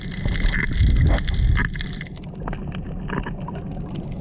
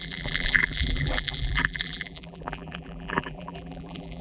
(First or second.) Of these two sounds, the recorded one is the first